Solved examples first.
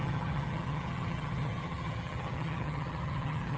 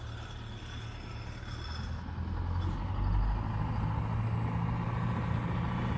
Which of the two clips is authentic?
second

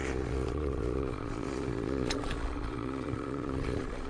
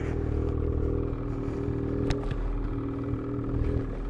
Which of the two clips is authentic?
second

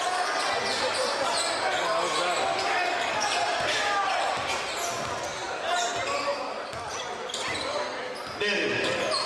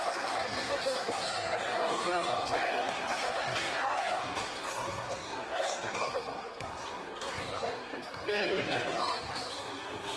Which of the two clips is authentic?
first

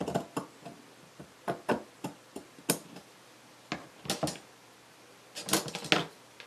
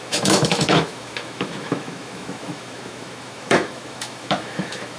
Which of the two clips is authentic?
first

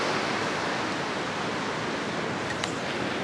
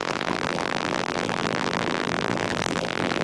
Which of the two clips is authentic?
first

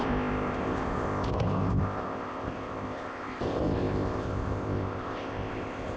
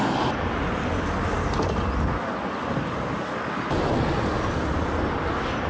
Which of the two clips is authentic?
second